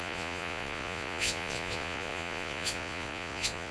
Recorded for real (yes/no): no